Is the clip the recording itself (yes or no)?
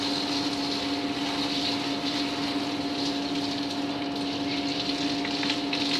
yes